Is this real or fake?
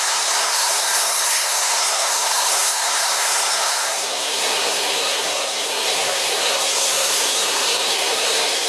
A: fake